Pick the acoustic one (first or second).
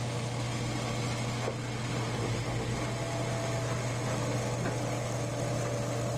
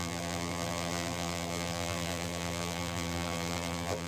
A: first